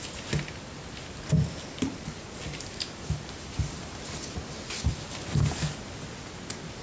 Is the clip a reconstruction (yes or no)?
no